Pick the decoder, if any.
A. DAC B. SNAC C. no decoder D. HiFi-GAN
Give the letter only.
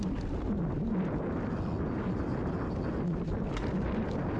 C